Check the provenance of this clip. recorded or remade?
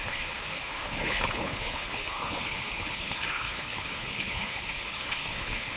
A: remade